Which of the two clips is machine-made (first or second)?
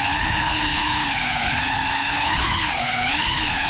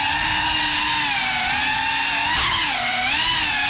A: first